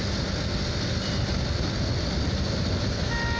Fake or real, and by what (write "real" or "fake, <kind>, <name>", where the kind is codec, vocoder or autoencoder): real